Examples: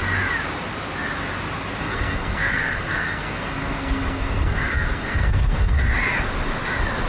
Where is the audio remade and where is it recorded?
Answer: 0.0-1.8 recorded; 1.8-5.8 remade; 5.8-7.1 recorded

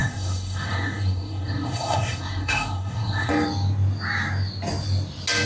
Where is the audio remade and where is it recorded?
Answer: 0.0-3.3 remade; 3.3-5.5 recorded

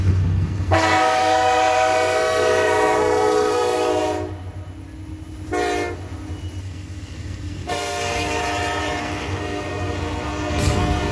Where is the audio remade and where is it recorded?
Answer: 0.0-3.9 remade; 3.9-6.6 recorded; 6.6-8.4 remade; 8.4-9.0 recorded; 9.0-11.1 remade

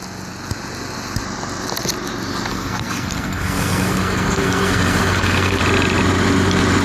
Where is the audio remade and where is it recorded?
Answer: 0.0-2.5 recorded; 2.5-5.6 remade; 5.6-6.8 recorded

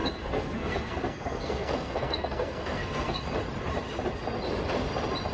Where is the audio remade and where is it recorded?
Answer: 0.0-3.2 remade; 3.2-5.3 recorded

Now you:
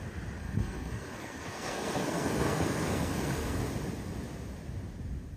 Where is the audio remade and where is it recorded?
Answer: 0.0-0.4 recorded; 0.4-3.6 remade; 3.6-5.4 recorded